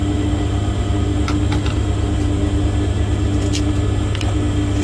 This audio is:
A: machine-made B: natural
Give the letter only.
B